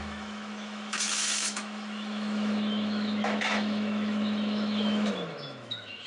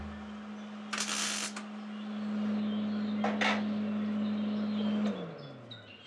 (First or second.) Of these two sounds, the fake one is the first